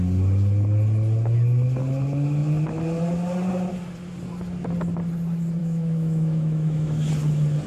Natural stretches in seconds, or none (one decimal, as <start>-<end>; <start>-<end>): 0.0-5.6; 7.1-7.7